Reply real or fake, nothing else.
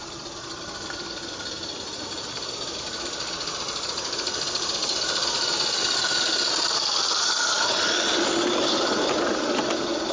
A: real